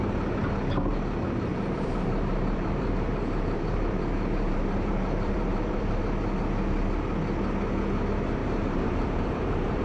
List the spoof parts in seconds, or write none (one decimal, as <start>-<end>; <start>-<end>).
1.5-6.0; 8.4-9.8

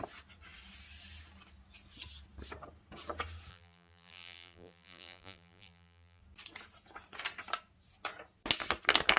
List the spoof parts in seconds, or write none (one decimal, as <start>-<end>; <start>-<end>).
3.5-6.2

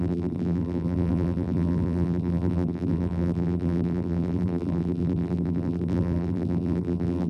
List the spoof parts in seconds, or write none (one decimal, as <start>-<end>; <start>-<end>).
0.0-7.3

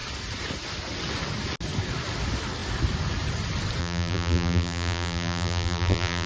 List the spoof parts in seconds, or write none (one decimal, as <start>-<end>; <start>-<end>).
3.8-6.3

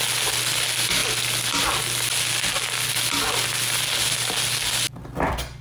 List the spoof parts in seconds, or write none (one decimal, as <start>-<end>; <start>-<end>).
none